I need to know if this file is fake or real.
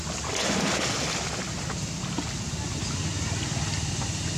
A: real